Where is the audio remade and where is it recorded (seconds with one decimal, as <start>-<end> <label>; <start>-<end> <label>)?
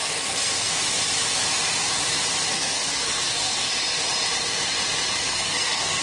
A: 0.0-0.8 remade; 0.8-2.5 recorded; 2.5-3.7 remade; 3.7-5.2 recorded; 5.2-6.0 remade